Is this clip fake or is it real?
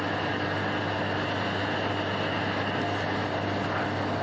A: real